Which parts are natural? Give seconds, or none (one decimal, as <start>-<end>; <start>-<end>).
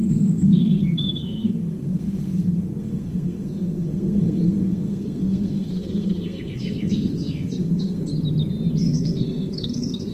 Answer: 8.1-8.8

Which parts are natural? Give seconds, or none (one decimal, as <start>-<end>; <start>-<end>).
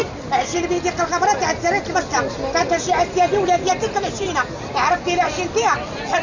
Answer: 0.0-6.2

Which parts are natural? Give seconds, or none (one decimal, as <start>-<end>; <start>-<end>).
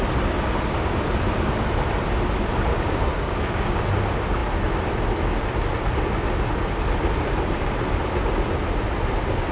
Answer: 0.0-2.7; 3.8-9.5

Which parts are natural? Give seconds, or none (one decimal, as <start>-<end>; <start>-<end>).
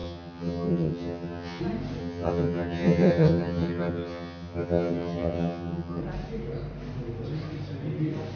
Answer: 1.6-2.0; 6.0-8.4